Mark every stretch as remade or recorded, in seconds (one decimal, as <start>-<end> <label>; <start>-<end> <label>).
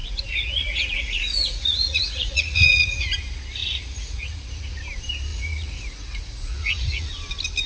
0.0-3.1 remade; 3.1-3.6 recorded; 3.6-4.8 remade; 4.8-5.3 recorded; 5.3-7.1 remade; 7.1-7.7 recorded